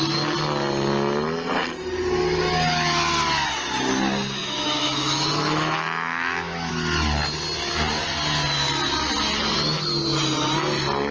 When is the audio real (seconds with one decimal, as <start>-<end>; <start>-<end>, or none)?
0.0-4.4; 6.7-11.1